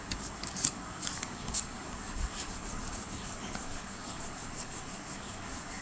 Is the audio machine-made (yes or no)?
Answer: yes